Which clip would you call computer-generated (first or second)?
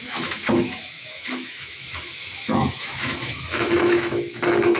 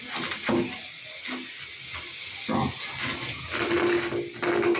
first